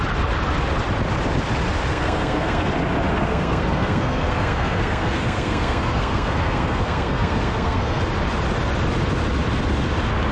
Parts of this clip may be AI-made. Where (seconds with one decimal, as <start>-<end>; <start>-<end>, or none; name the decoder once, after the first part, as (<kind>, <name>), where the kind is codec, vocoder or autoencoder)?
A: 1.9-2.7 (codec, SNAC); 3.1-8.0